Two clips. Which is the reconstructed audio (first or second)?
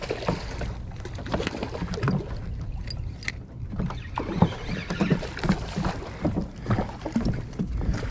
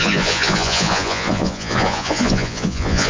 second